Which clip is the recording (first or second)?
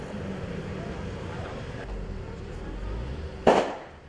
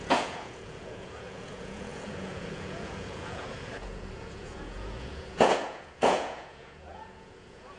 first